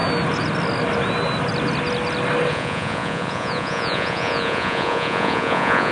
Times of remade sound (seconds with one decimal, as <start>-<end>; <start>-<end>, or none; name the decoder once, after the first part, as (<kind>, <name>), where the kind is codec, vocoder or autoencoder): 2.5-5.9 (vocoder, Vocos)